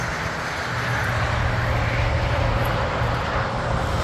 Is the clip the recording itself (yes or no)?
yes